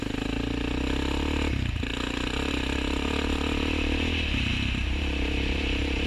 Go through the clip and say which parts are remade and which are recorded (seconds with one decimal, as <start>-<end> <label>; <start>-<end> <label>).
0.0-4.5 recorded; 4.5-6.1 remade